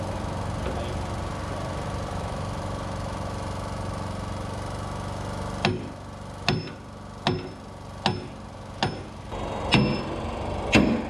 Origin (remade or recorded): recorded